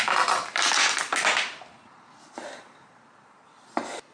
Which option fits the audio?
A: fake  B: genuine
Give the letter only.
B